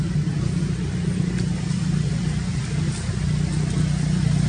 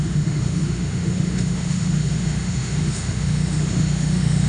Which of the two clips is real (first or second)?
first